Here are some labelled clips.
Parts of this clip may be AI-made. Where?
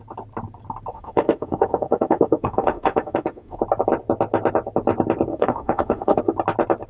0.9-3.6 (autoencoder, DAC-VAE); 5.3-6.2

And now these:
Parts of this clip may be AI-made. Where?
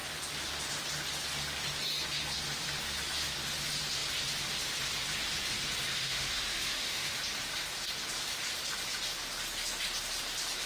5.9-7.2 (autoencoder, DAC-VAE)